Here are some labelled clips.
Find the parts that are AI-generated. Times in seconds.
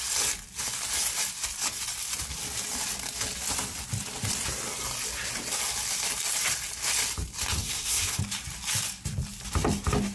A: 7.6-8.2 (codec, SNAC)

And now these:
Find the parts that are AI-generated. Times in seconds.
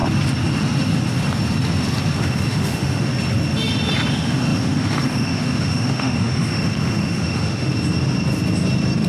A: 2.2-3.1 (autoencoder, DAC-VAE); 4.1-7.7